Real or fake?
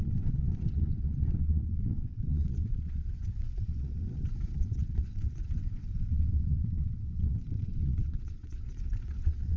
fake